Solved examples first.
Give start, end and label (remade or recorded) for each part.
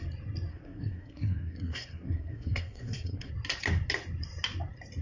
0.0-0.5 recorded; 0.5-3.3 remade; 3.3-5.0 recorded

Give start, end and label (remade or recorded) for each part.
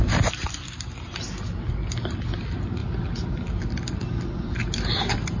0.0-5.4 recorded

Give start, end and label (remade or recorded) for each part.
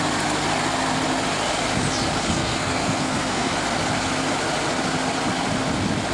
0.0-2.2 recorded; 2.2-3.5 remade; 3.5-6.1 recorded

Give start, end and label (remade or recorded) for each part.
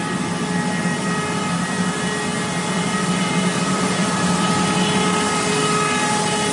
0.0-6.5 recorded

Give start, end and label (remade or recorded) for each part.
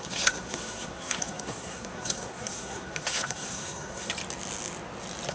0.0-4.1 remade; 4.1-5.3 recorded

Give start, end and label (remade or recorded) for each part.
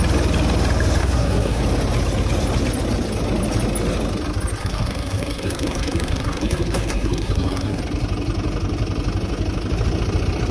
0.0-1.0 recorded; 1.0-1.6 remade; 1.6-4.6 recorded; 4.6-7.8 remade; 7.8-10.5 recorded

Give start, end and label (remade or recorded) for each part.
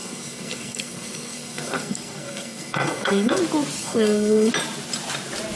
0.0-3.4 remade; 3.4-3.8 recorded; 3.8-4.5 remade; 4.5-5.6 recorded